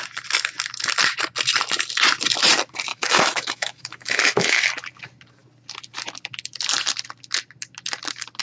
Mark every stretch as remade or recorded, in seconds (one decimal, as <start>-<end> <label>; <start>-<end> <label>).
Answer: 0.0-2.9 recorded; 2.9-4.6 remade; 4.6-8.4 recorded